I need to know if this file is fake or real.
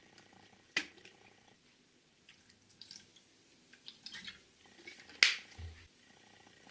real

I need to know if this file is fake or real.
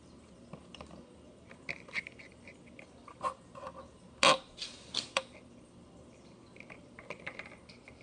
real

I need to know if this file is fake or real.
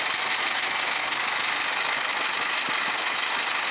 real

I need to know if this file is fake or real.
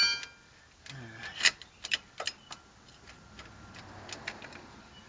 real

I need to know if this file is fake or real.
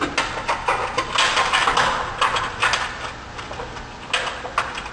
real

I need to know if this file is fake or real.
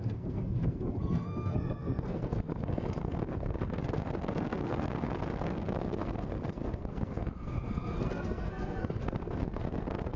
fake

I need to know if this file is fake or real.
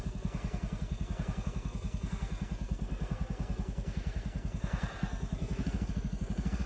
fake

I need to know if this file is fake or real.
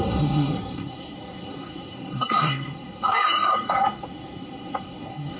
fake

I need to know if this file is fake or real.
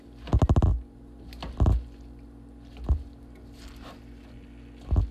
real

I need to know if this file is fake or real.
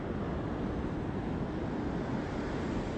real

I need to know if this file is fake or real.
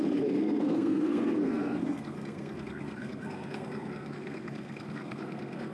fake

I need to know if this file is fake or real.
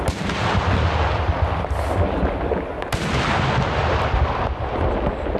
real